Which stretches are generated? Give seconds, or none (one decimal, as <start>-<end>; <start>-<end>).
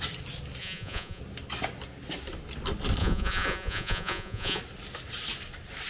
0.6-1.2; 3.0-4.6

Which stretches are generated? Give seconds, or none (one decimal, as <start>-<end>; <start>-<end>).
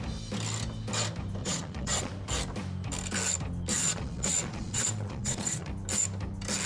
1.4-2.1; 3.7-5.7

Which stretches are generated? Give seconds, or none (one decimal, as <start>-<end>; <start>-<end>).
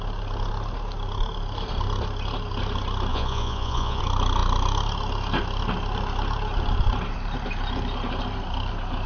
3.1-4.0